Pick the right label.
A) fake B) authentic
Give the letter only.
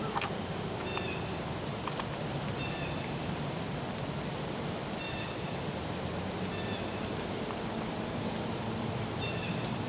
A